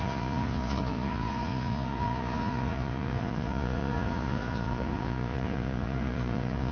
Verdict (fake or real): fake